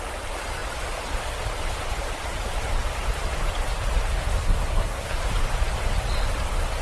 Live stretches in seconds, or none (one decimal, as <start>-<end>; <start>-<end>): 0.0-4.4; 5.2-6.8